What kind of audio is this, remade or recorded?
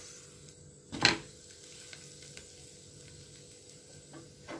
recorded